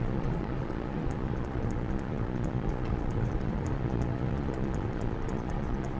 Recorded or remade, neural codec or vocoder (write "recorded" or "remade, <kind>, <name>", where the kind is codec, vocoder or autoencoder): remade, vocoder, Vocos